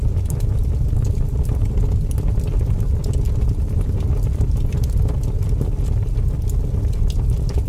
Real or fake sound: real